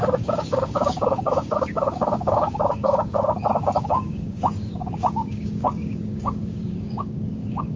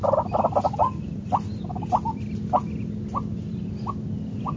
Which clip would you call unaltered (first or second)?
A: second